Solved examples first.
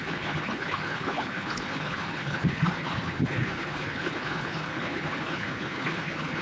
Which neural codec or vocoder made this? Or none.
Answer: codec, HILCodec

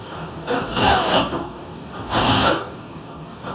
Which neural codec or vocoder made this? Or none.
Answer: codec, DAC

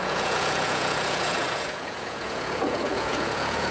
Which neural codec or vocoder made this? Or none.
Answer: vocoder, Vocos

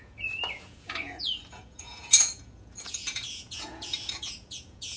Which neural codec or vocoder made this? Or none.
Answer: vocoder, Vocos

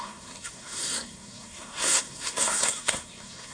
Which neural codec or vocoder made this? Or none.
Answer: codec, SNAC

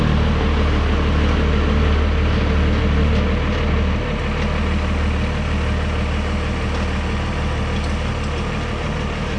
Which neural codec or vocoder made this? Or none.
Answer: none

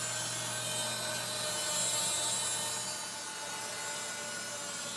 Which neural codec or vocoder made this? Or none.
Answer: none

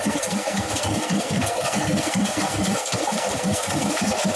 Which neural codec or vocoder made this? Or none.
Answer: codec, SNAC